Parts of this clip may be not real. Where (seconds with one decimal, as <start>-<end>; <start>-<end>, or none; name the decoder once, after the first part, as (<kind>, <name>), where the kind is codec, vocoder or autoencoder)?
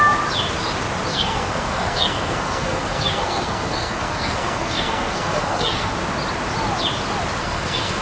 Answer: 1.1-5.9 (codec, SNAC); 7.4-8.0